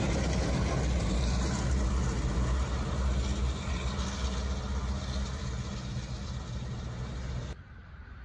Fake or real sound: real